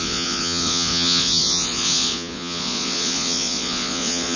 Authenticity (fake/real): fake